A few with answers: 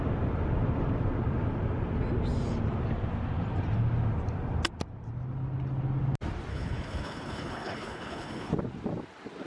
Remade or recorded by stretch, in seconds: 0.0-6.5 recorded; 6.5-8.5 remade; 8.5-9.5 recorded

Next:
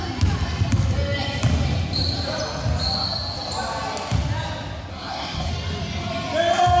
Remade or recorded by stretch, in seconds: 0.0-4.9 recorded; 4.9-5.5 remade; 5.5-6.8 recorded

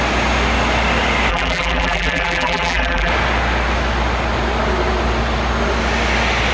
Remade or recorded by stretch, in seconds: 0.0-1.3 recorded; 1.3-3.1 remade; 3.1-6.5 recorded